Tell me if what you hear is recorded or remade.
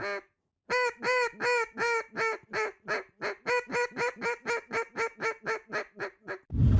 recorded